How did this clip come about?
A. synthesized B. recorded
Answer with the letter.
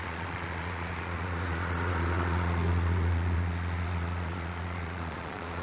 A